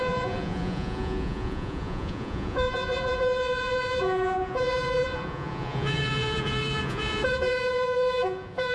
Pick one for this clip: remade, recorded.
remade